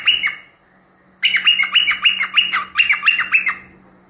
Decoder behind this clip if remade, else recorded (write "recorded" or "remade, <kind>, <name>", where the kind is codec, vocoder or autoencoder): recorded